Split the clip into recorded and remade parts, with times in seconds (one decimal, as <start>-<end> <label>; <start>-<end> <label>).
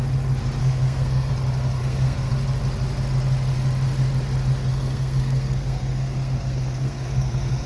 0.0-0.6 recorded; 0.6-1.3 remade; 1.3-1.8 recorded; 1.8-2.3 remade; 2.3-4.7 recorded; 4.7-7.7 remade